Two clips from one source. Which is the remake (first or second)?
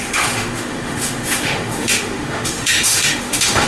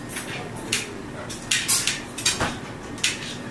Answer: first